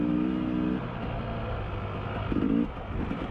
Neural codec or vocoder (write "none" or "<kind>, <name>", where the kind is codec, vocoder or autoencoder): none